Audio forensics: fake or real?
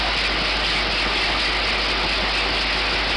real